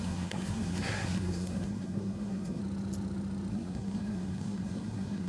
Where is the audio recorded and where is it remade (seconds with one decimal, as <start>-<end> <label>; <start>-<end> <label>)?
0.0-2.6 remade; 2.6-3.5 recorded; 3.5-5.3 remade